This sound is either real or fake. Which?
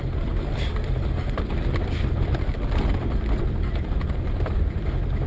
fake